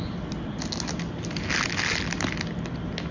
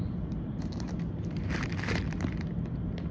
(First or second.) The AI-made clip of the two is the second